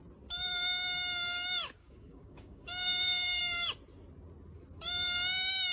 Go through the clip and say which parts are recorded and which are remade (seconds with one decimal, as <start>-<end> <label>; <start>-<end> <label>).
0.0-1.8 recorded; 1.8-3.4 remade; 3.4-5.7 recorded